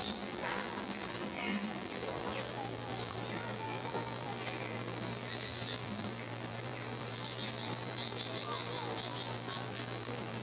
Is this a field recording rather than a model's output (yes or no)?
no